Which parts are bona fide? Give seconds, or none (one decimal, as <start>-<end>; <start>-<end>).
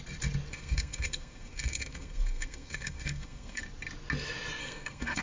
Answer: 0.0-0.5; 3.6-4.6